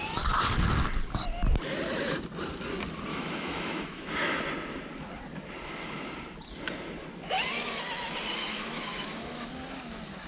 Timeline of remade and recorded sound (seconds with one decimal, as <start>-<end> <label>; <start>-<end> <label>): 0.0-3.1 recorded; 3.1-4.4 remade; 4.4-8.4 recorded; 8.4-9.5 remade; 9.5-10.3 recorded